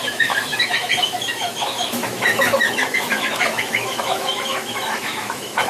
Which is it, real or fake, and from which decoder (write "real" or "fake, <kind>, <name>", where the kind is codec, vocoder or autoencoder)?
fake, autoencoder, DAC-VAE